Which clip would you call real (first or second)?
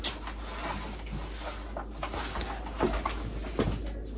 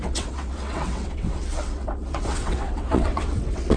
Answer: first